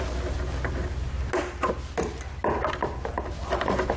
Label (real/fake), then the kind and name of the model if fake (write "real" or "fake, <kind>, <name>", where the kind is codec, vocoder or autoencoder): real